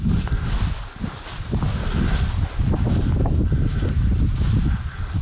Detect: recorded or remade recorded